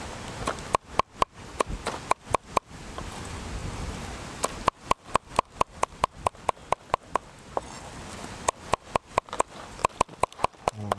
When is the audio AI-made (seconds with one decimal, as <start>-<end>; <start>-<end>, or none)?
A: none